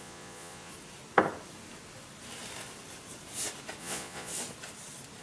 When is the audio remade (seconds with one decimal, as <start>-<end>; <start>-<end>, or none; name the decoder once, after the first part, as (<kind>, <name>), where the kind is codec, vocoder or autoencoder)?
0.0-0.7 (vocoder, Vocos); 3.8-4.3